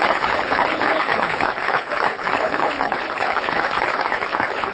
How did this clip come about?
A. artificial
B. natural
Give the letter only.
A